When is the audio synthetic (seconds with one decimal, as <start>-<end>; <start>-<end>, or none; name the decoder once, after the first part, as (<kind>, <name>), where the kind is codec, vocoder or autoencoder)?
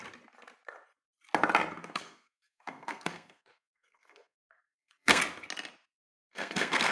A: 1.8-5.2 (codec, SNAC); 6.1-6.9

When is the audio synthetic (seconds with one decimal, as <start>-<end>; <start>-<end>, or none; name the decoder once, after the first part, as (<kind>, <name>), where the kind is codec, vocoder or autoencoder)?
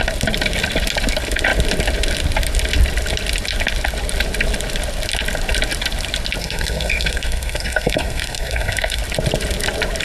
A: 6.4-9.0 (codec, SNAC)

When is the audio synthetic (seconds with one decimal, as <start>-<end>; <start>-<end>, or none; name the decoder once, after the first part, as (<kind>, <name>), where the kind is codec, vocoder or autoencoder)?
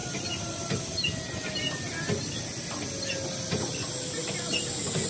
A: none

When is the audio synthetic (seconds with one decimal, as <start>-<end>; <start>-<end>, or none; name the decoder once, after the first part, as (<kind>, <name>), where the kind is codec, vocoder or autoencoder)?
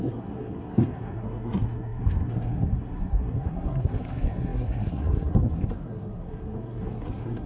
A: 0.0-7.5 (codec, SNAC)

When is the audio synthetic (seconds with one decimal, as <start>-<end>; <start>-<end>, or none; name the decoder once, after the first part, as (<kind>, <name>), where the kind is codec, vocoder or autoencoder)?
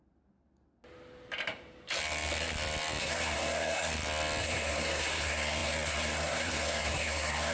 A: 3.0-3.9 (codec, SNAC); 4.4-7.5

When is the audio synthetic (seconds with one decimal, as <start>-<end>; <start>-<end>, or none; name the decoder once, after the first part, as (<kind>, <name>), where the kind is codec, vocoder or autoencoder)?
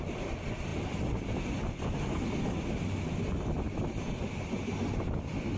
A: none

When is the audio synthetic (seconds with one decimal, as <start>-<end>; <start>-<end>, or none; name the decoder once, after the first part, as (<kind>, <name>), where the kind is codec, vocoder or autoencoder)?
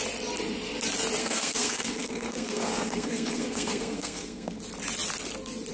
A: 1.2-4.6 (codec, SNAC)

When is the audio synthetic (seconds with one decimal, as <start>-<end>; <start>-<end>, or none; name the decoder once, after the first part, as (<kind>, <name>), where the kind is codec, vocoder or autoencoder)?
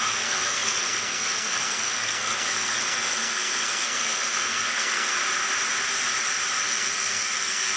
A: 0.0-5.1 (codec, SNAC); 6.6-7.8